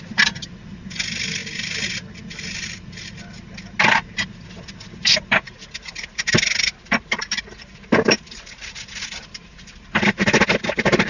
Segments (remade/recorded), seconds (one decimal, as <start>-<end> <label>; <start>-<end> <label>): 0.0-11.1 recorded